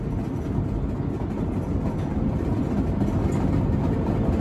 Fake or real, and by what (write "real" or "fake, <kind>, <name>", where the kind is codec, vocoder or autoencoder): real